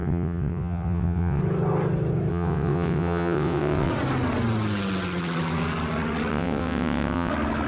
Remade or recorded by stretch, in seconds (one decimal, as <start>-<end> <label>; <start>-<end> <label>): 0.0-1.4 remade; 1.4-2.3 recorded; 2.3-3.9 remade; 3.9-6.3 recorded; 6.3-7.3 remade; 7.3-7.7 recorded